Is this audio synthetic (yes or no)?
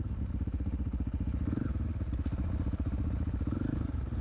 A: no